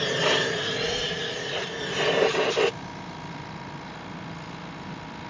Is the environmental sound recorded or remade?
recorded